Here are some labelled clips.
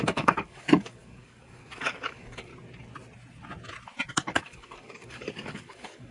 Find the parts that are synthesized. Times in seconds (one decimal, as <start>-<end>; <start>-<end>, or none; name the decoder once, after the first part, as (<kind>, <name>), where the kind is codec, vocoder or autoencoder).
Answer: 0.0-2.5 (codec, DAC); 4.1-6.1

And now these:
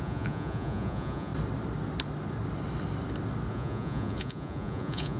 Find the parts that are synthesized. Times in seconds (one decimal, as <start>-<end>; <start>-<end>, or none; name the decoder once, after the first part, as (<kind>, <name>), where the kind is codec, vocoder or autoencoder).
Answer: 0.0-1.3 (vocoder, Vocos); 3.5-5.2

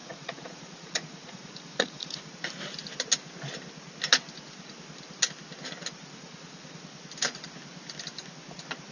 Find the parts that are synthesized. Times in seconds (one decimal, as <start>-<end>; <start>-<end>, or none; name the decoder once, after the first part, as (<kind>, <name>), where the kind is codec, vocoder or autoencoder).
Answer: 0.0-2.3 (vocoder, Vocos); 6.0-6.8

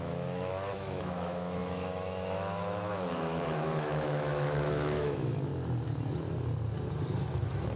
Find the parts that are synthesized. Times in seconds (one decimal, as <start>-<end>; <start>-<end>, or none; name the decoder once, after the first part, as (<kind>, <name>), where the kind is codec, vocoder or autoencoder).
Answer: 0.0-5.5 (autoencoder, DAC-VAE); 7.3-7.8